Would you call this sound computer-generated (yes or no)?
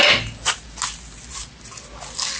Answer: no